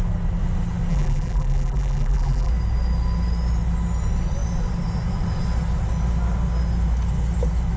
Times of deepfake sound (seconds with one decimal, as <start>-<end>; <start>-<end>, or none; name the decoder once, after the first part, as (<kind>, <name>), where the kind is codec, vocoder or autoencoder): 0.9-2.5 (vocoder, BigVGAN v2)